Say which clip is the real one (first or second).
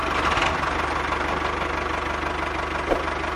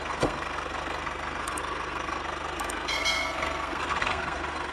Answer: first